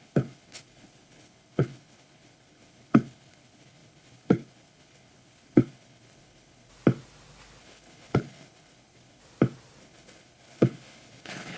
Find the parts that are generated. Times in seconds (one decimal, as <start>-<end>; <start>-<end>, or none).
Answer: 0.0-6.7; 7.6-9.2; 9.8-11.6